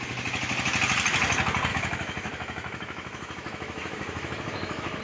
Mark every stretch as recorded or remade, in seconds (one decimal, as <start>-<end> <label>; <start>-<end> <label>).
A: 0.0-1.7 recorded; 1.7-5.0 remade